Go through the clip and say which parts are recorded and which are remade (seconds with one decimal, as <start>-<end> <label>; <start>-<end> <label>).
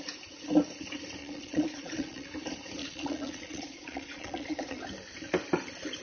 0.0-1.2 recorded; 1.2-2.3 remade; 2.3-2.8 recorded; 2.8-4.8 remade; 4.8-6.0 recorded